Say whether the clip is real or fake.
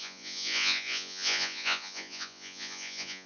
fake